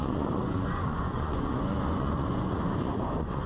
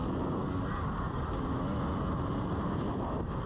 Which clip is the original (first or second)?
second